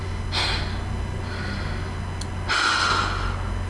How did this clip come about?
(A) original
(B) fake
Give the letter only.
A